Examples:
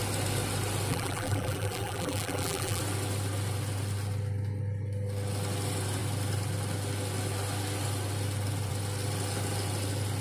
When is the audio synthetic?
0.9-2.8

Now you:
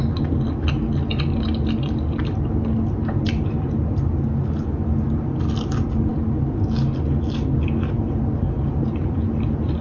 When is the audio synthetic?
none

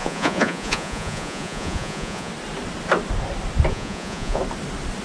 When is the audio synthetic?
0.0-2.3; 3.7-4.4

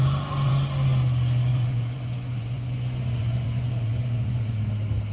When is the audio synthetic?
1.5-4.6

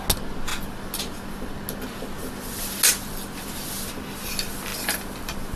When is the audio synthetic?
none

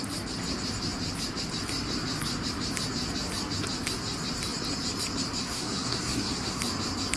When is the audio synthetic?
5.4-6.6

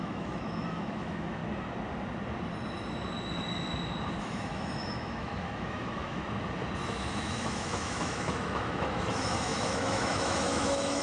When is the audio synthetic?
0.0-1.4; 4.2-6.2; 6.8-11.0